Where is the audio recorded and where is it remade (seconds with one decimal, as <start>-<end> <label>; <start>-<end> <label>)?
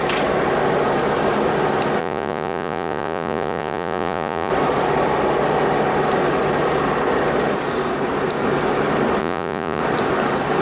0.0-2.0 recorded; 2.0-4.5 remade; 4.5-9.2 recorded; 9.2-9.8 remade; 9.8-10.6 recorded